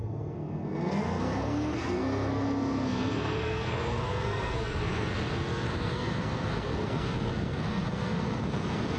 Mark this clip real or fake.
fake